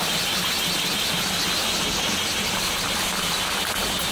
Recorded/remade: recorded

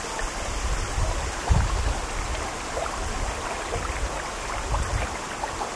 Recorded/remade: recorded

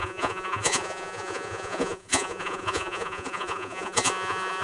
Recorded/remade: remade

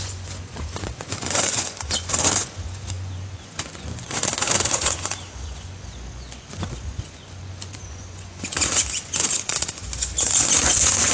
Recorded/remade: remade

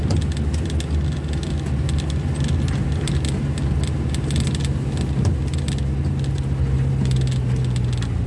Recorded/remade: recorded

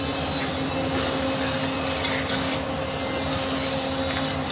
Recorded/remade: recorded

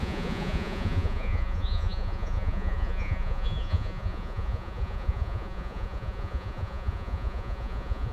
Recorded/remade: remade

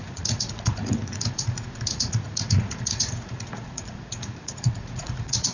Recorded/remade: remade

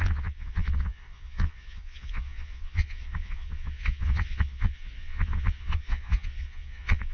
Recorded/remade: remade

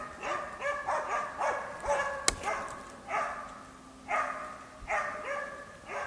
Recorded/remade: recorded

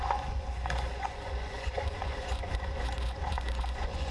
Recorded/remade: remade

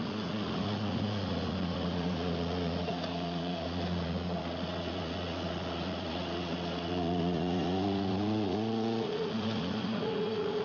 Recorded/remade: remade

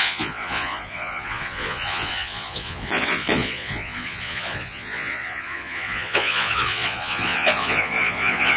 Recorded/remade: remade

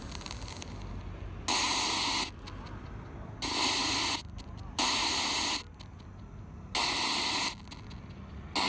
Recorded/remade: recorded